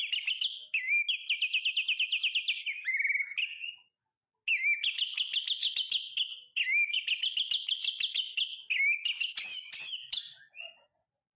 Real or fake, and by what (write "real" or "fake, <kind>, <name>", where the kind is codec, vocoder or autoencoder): real